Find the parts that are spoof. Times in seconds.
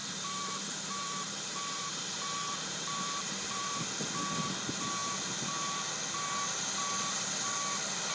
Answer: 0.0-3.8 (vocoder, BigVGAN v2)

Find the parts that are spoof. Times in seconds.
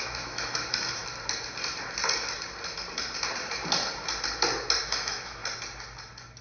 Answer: 0.0-1.0 (autoencoder, DAC-VAE); 4.8-5.4